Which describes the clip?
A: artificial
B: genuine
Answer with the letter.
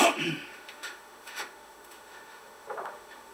A